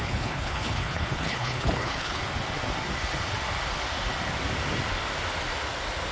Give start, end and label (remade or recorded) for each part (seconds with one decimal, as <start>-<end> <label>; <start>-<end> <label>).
0.0-2.2 remade; 2.2-6.1 recorded

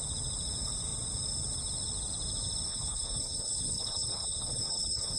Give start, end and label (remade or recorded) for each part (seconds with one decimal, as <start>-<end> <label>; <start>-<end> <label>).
0.0-2.7 recorded; 2.7-5.2 remade

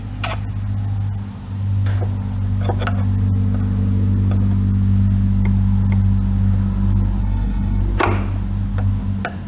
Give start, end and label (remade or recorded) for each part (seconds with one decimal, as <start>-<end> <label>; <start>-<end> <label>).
0.0-7.2 recorded; 7.2-7.8 remade; 7.8-9.5 recorded

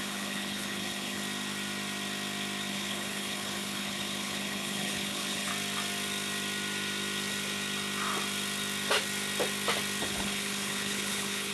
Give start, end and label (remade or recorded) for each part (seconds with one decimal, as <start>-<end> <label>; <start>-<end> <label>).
0.0-1.2 remade; 1.2-2.7 recorded; 2.7-5.5 remade; 5.5-10.0 recorded; 10.0-11.5 remade

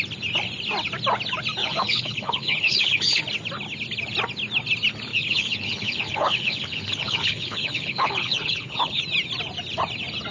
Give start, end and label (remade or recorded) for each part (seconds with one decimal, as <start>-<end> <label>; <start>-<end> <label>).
0.0-1.6 recorded; 1.6-3.2 remade; 3.2-5.1 recorded; 5.1-9.0 remade; 9.0-10.3 recorded

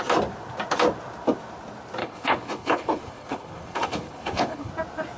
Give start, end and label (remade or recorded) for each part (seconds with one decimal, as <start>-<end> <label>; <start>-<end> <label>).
0.0-2.0 recorded; 2.0-4.7 remade; 4.7-5.2 recorded